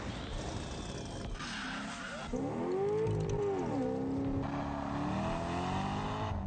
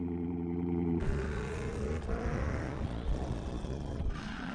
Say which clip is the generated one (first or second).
second